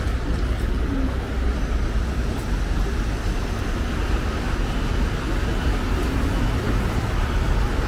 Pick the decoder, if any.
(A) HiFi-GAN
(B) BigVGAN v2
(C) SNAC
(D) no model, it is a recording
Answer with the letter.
D